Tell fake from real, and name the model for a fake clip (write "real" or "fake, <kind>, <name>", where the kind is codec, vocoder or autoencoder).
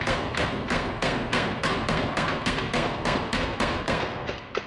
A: fake, codec, SNAC